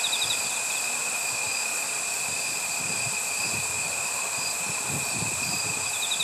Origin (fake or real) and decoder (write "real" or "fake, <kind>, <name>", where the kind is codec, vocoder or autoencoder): real